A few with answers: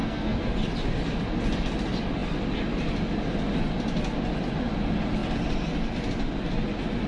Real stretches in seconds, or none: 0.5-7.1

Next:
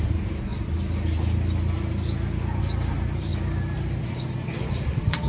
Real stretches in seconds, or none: 0.5-2.6; 3.3-4.7

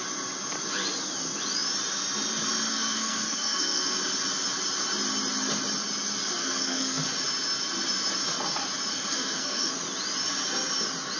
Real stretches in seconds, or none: 0.0-2.7; 4.0-6.4; 7.0-8.9; 9.7-11.2

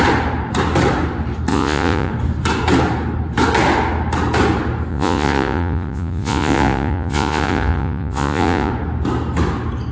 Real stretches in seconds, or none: 0.0-1.5; 2.1-4.9; 8.7-9.9

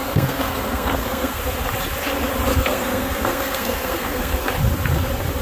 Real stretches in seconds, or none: 1.4-2.5; 4.5-5.4